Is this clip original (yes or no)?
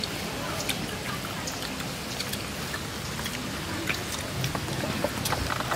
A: yes